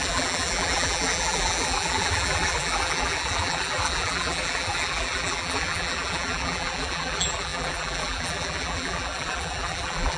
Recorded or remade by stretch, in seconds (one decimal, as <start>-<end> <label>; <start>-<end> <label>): 0.0-10.2 remade